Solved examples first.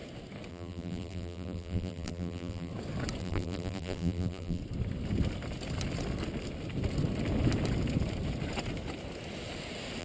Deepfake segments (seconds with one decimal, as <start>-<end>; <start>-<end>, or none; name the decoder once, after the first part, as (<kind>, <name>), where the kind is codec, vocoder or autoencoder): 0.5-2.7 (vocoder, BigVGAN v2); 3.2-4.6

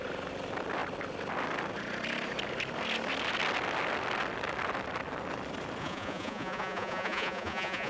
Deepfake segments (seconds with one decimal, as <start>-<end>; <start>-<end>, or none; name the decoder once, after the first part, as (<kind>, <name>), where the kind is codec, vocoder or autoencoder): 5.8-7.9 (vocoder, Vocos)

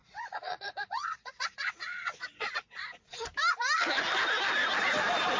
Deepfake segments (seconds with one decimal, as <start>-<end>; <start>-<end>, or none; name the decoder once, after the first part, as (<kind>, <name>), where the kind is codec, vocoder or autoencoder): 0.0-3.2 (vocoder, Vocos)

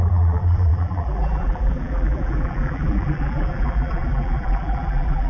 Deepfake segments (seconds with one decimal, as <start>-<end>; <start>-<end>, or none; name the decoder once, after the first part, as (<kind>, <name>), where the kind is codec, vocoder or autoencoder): 0.0-5.3 (vocoder, BigVGAN v2)

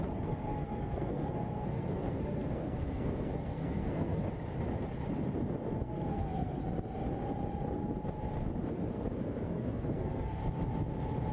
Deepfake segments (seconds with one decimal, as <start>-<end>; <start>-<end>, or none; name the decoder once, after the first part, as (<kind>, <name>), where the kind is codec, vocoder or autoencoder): 0.0-4.2 (codec, SNAC); 5.8-6.6; 8.7-10.4

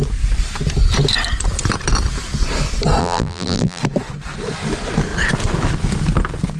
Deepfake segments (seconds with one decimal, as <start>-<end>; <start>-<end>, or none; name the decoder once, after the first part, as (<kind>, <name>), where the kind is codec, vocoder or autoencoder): 3.0-3.8 (vocoder, BigVGAN v2)

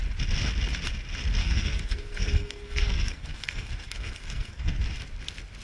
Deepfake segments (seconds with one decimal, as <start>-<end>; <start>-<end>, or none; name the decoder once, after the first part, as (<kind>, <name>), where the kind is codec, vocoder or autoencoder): 1.4-4.8 (codec, SNAC)

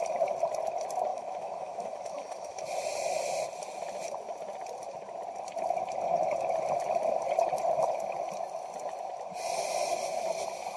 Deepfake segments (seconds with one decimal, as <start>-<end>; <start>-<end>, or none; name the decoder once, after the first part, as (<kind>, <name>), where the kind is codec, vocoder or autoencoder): 1.1-2.6 (autoencoder, DAC-VAE)